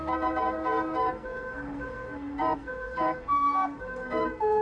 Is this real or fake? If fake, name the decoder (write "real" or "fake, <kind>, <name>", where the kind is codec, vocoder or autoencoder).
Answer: fake, codec, SNAC